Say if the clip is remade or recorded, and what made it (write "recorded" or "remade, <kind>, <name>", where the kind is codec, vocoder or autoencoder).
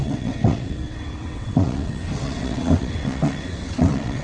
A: remade, vocoder, WaveNeXt